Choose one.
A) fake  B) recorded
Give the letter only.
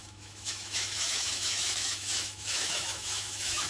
A